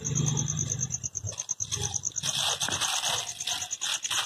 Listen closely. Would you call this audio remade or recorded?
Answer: recorded